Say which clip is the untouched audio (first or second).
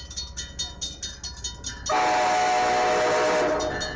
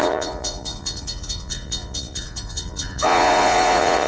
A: first